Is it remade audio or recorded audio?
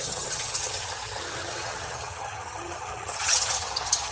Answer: remade